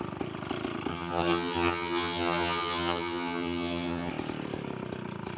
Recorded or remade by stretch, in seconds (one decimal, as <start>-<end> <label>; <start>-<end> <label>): 0.0-0.9 recorded; 0.9-4.1 remade; 4.1-5.4 recorded